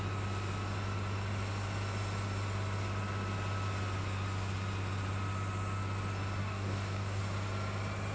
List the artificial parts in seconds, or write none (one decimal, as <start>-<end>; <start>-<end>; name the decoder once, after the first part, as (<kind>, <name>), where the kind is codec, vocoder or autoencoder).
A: 6.4-7.2 (codec, DAC)